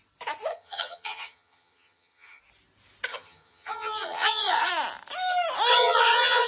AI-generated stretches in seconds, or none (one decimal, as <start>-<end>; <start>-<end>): 0.5-2.4; 3.1-4.7; 5.7-6.5